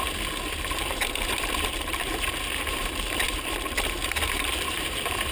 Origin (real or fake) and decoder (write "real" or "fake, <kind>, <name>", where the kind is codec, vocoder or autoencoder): fake, vocoder, BigVGAN v2